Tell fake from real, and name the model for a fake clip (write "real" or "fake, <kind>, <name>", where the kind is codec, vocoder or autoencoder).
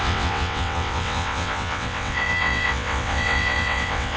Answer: fake, vocoder, WaveNeXt